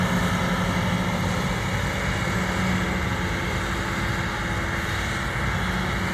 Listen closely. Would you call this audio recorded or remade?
recorded